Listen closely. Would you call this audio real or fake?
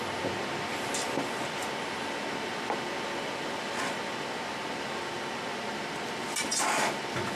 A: real